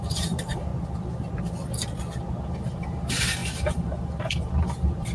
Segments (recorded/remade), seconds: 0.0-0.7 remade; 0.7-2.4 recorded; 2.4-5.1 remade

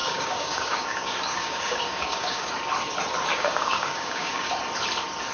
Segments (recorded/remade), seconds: 0.0-2.5 remade; 2.5-3.3 recorded; 3.3-4.5 remade; 4.5-5.3 recorded

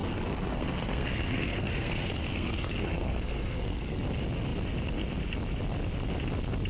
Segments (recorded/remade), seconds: 0.0-4.0 remade; 4.0-6.7 recorded

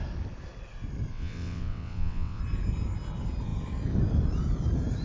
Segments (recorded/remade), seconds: 0.0-1.1 recorded; 1.1-2.4 remade; 2.4-5.0 recorded

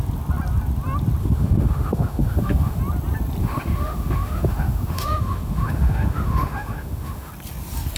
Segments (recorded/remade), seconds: 0.0-1.2 recorded; 1.2-2.8 remade; 2.8-3.4 recorded; 3.4-7.3 remade; 7.3-8.0 recorded

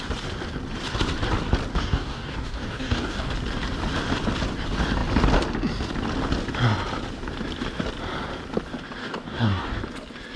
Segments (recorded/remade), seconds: 0.0-1.7 recorded; 1.7-3.3 remade; 3.3-9.0 recorded; 9.0-9.8 remade; 9.8-10.4 recorded